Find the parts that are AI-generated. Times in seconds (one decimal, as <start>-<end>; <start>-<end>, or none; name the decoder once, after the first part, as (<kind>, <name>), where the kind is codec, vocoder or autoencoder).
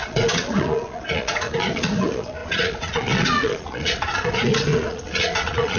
0.0-5.8 (vocoder, Vocos)